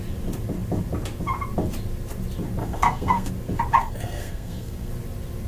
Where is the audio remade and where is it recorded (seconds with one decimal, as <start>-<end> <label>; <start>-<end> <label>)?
0.0-2.6 recorded; 2.6-3.3 remade; 3.3-3.8 recorded; 3.8-4.9 remade; 4.9-5.5 recorded